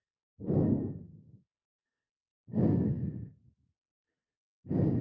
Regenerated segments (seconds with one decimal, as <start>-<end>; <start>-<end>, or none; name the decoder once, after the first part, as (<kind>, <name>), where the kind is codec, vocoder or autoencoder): 0.0-3.0 (codec, SNAC)